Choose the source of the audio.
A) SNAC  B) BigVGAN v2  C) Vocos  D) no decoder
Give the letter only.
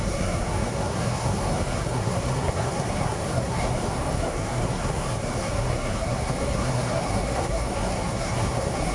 A